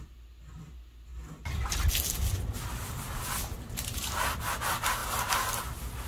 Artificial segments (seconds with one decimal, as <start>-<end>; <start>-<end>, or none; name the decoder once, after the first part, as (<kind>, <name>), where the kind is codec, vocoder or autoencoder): none